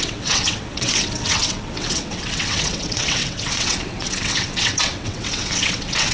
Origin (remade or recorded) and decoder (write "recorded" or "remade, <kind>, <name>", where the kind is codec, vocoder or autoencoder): remade, vocoder, WaveNeXt